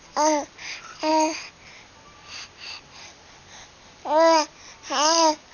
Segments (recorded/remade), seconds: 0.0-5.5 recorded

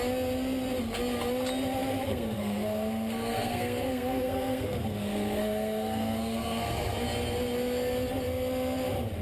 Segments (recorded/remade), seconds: 0.0-2.0 recorded; 2.0-7.0 remade; 7.0-9.2 recorded

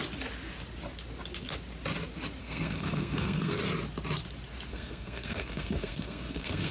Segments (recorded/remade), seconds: 0.0-2.4 recorded; 2.4-3.6 remade; 3.6-4.7 recorded; 4.7-6.7 remade